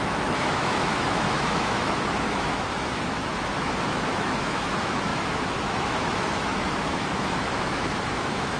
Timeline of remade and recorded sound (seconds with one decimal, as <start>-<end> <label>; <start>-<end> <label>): 0.0-8.6 remade